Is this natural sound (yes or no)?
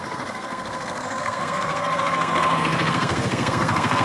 no